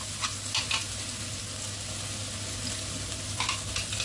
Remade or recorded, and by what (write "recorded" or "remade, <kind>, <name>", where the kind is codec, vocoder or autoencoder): recorded